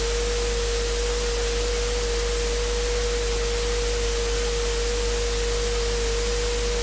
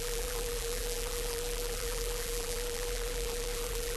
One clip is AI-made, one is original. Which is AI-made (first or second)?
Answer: second